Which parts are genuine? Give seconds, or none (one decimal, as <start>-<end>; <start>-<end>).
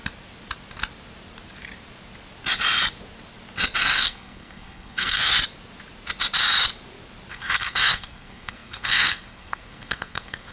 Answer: 0.0-3.8; 5.3-7.3